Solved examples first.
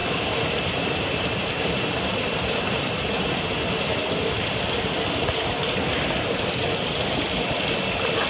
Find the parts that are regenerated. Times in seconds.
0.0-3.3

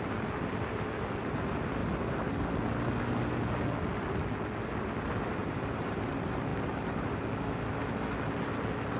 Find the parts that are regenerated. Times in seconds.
5.4-6.1

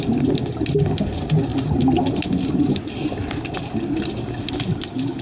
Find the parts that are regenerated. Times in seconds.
none

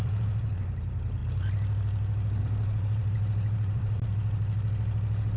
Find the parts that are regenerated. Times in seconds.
0.0-1.2; 2.4-4.1

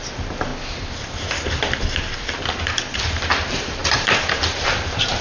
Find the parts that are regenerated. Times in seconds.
0.0-0.5; 2.6-5.2